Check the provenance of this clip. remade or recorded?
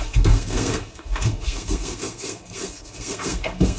remade